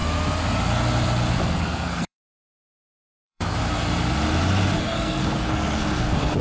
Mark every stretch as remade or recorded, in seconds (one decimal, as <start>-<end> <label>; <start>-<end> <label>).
0.0-1.4 recorded; 1.4-3.6 remade; 3.6-4.8 recorded; 4.8-6.4 remade